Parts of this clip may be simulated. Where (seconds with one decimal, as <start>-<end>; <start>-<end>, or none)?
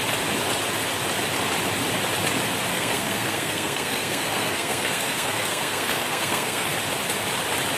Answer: 2.7-6.7